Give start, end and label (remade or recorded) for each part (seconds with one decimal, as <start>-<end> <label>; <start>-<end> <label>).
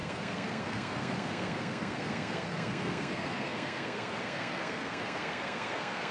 0.0-6.1 remade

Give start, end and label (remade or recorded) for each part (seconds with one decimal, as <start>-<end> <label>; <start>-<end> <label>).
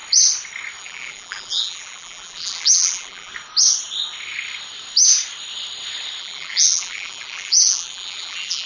0.0-0.8 recorded; 0.8-3.3 remade; 3.3-6.2 recorded; 6.2-8.7 remade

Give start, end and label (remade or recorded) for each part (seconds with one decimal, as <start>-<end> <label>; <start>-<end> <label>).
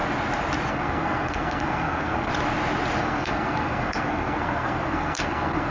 0.0-0.7 recorded; 0.7-2.3 remade; 2.3-3.0 recorded; 3.0-5.7 remade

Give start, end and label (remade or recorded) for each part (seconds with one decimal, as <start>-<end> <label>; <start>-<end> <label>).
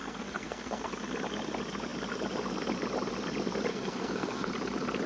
0.0-0.9 remade; 0.9-3.7 recorded; 3.7-4.5 remade; 4.5-5.1 recorded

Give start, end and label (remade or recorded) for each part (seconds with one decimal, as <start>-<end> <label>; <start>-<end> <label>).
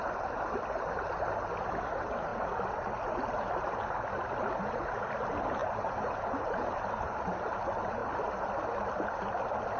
0.0-5.6 recorded; 5.6-7.2 remade; 7.2-9.8 recorded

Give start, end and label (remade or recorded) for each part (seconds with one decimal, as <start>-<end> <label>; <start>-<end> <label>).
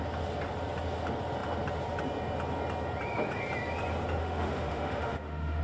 0.0-4.2 recorded; 4.2-5.6 remade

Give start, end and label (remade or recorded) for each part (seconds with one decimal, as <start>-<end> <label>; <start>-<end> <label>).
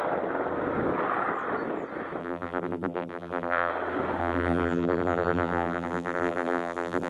0.0-2.2 recorded; 2.2-3.7 remade; 3.7-4.2 recorded; 4.2-7.1 remade